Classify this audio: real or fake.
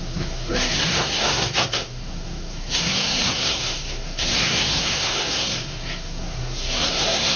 fake